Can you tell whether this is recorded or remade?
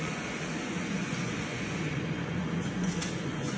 remade